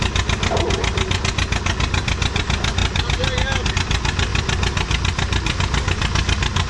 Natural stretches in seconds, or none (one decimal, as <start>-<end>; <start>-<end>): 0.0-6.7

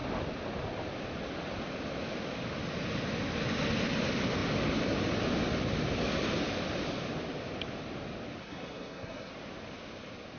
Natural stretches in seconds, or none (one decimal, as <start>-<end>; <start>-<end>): 0.0-8.4; 9.3-10.4

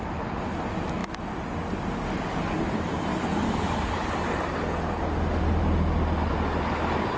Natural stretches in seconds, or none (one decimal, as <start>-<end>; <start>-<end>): 0.0-7.2

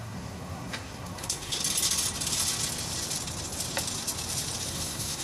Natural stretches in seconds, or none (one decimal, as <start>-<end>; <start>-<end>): 1.6-4.7

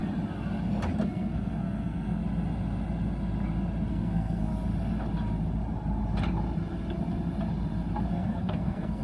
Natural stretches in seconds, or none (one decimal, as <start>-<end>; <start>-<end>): 0.0-1.0; 2.2-3.9; 4.5-8.1